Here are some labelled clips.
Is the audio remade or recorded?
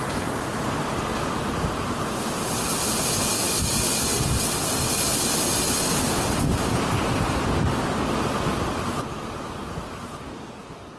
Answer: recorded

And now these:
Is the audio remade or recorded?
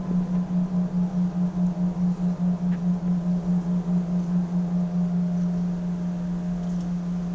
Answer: recorded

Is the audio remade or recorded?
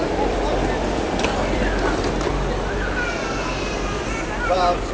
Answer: remade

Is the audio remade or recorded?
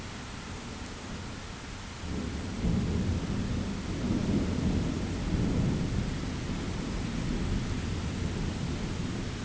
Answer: recorded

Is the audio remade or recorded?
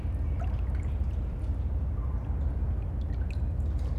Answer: remade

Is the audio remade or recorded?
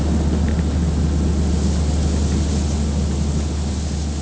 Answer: recorded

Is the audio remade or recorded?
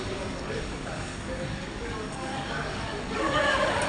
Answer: remade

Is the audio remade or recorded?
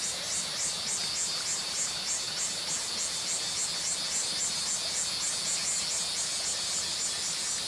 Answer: recorded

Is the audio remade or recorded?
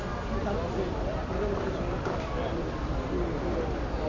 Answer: recorded